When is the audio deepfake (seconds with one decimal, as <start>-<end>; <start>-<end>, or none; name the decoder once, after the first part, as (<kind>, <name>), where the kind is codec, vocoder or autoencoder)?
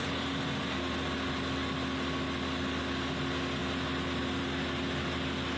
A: none